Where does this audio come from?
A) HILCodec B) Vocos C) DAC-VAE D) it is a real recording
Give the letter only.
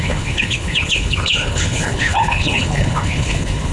A